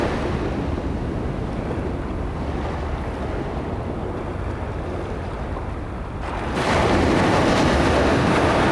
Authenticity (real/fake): real